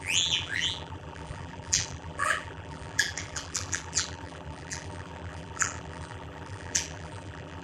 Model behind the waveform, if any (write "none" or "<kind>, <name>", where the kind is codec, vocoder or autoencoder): vocoder, BigVGAN v2